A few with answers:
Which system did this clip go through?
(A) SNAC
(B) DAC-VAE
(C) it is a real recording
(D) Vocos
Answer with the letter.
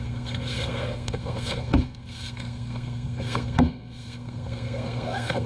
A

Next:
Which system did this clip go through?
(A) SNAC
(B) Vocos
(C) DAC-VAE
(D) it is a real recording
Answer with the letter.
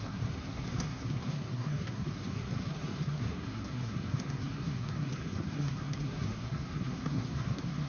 A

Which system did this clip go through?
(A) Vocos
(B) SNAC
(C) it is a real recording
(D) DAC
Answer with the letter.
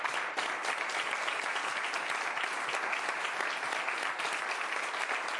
C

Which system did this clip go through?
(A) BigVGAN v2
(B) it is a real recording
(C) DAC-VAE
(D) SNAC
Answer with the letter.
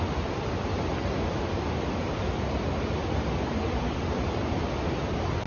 B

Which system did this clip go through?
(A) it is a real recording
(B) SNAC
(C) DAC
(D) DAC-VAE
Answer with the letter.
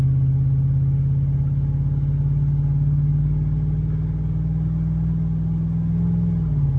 A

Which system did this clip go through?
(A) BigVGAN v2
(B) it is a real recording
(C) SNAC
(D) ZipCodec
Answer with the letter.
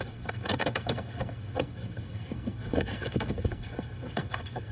C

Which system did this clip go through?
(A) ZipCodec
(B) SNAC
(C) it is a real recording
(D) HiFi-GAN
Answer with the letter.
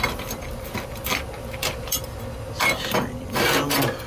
C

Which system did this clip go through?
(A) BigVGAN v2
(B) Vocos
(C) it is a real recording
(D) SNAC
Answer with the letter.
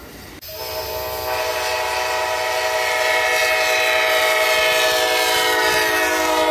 C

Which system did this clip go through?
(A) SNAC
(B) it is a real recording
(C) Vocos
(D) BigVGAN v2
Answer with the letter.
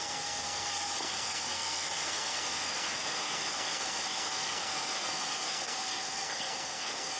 A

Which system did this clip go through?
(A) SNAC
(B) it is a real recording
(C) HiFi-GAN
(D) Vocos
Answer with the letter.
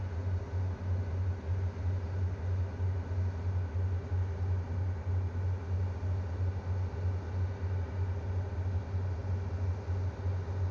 B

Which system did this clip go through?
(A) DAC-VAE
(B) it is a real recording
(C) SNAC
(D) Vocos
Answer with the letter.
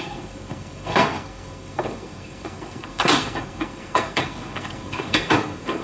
C